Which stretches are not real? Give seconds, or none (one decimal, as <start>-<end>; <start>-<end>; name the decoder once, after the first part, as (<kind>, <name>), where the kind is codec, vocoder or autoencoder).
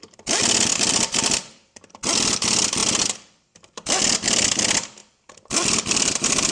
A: 0.7-1.8 (vocoder, BigVGAN v2); 5.0-6.5